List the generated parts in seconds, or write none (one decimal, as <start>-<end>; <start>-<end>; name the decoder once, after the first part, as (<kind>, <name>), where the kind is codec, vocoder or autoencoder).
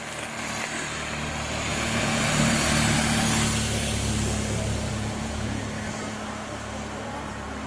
1.7-2.2 (vocoder, Vocos); 4.9-5.6